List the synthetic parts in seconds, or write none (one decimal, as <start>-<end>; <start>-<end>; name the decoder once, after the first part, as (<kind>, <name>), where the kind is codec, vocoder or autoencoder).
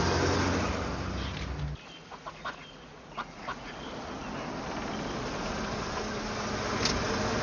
2.0-3.7 (vocoder, Vocos)